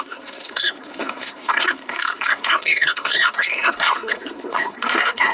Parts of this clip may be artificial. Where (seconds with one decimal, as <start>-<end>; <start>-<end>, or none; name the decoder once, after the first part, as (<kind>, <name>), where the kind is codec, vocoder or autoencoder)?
0.0-5.3 (codec, SNAC)